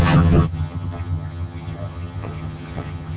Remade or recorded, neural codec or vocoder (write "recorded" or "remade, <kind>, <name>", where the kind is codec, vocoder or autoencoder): remade, vocoder, HiFi-GAN